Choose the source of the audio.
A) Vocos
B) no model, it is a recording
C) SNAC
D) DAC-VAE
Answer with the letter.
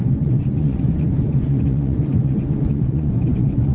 A